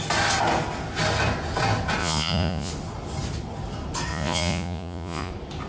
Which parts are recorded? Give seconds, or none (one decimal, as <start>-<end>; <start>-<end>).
0.0-2.0; 2.7-4.1; 5.3-5.7